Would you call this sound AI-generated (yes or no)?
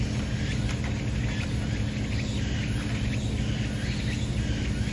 no